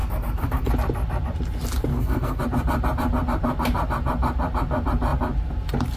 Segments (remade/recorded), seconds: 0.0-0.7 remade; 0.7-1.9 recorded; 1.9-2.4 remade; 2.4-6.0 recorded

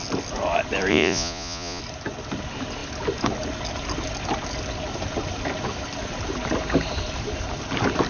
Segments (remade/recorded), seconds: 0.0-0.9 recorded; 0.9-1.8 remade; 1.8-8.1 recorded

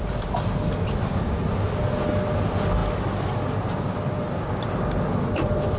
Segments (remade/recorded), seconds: 0.0-5.8 recorded